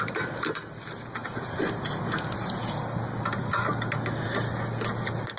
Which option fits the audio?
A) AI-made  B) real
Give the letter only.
B